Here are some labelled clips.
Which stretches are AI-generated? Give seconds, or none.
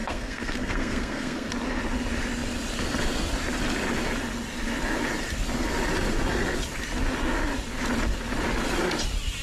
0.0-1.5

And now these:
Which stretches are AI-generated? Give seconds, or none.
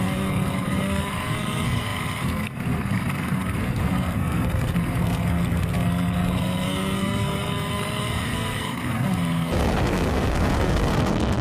0.0-11.4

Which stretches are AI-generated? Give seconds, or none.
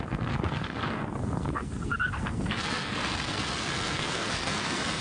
0.0-5.0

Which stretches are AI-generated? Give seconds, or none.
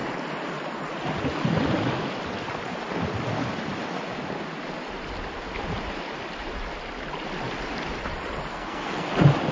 8.5-9.1